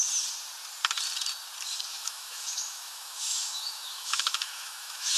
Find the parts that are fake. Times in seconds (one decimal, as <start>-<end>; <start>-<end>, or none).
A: 1.9-5.2